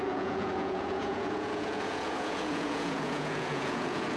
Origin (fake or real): fake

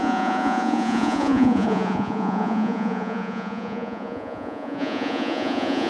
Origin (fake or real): fake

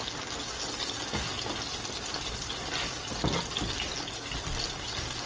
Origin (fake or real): real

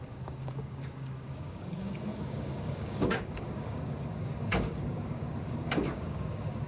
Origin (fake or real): fake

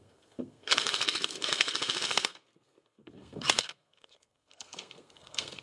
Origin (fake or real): fake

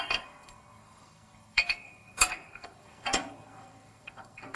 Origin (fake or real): fake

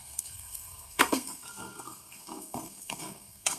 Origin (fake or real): fake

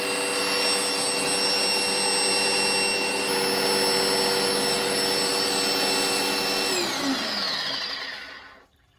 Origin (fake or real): real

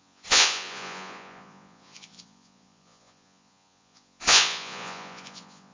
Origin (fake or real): fake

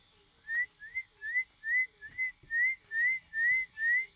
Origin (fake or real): real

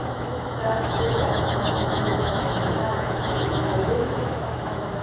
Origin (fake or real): fake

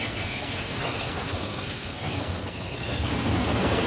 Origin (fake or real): fake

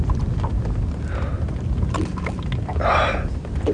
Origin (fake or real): real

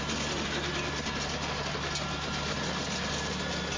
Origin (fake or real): real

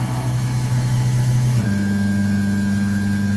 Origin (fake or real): fake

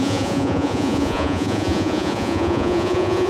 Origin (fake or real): fake